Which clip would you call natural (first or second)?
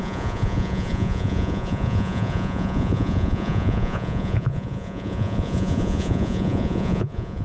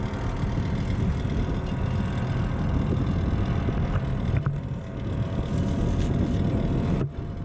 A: second